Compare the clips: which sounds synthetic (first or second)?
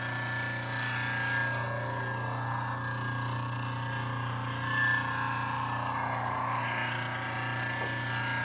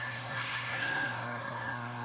second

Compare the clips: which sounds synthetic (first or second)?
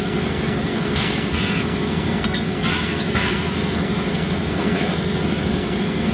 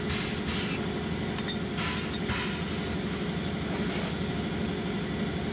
first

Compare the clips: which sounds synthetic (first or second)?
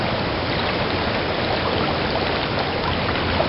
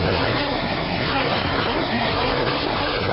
second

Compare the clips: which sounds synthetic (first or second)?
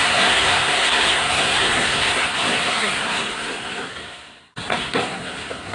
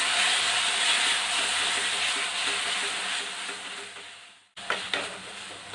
first